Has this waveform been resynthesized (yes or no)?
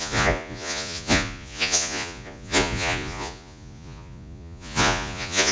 yes